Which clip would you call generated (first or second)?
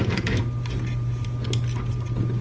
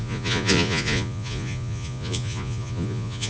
second